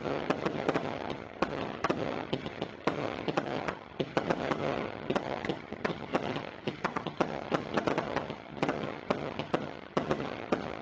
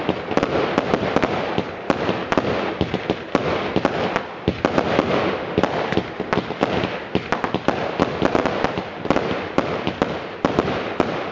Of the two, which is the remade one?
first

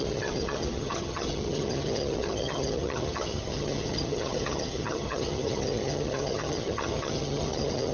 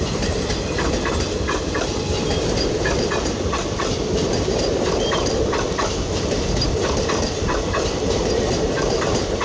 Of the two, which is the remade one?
first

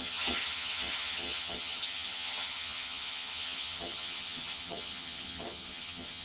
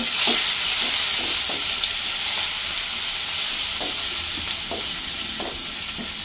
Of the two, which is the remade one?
first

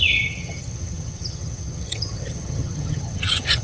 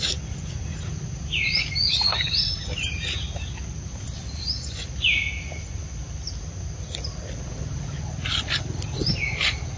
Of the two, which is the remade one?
first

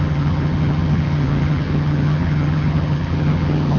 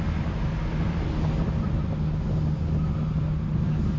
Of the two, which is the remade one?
first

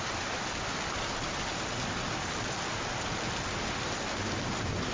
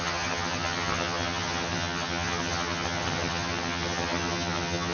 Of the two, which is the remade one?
second